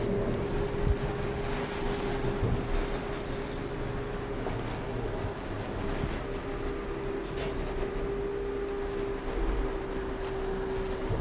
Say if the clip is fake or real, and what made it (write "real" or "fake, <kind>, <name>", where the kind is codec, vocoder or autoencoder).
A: real